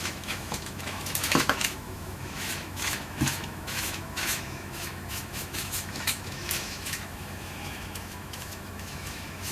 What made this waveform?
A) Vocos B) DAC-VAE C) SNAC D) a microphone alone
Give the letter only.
B